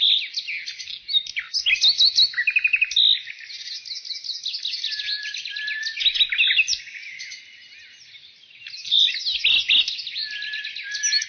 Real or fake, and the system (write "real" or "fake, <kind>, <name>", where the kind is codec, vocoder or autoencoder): real